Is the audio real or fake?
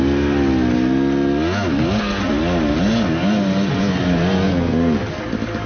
real